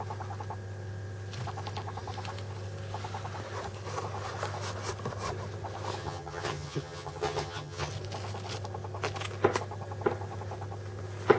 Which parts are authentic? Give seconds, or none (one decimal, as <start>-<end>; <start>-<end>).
0.0-6.0; 7.9-11.4